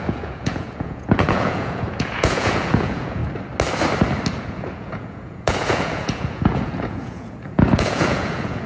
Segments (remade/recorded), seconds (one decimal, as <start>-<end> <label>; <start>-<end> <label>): 0.0-3.2 remade; 3.2-4.4 recorded; 4.4-8.7 remade